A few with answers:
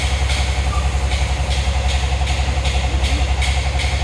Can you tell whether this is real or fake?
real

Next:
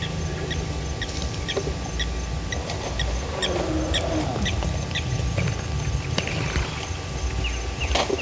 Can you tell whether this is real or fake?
real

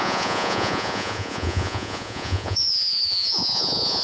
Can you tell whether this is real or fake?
fake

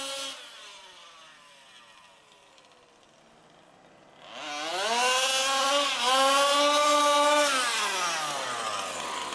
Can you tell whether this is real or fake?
real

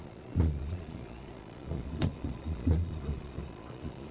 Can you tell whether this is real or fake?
fake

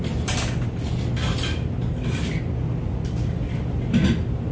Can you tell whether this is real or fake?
real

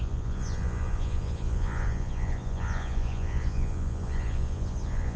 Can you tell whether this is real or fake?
fake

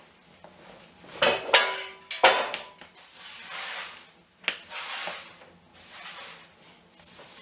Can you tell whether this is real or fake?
real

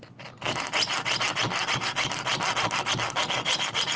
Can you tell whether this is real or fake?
real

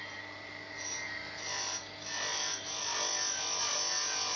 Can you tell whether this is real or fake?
real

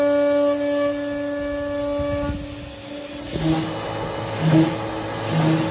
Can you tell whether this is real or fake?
real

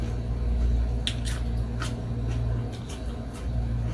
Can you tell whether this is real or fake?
real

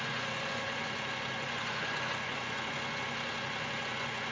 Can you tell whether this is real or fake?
fake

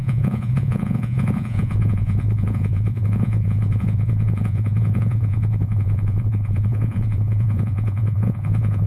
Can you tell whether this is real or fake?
fake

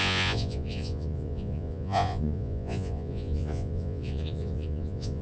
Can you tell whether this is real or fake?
fake